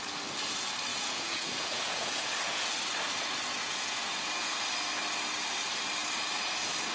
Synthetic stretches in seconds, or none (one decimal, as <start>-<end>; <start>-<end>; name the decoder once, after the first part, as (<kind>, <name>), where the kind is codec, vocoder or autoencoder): 0.9-2.7 (vocoder, Vocos); 3.6-4.6